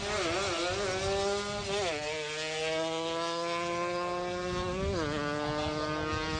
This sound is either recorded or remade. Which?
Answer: recorded